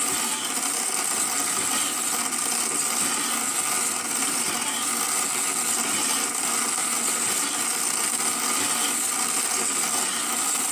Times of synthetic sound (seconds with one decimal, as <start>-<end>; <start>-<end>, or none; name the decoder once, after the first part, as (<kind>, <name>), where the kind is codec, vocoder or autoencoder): none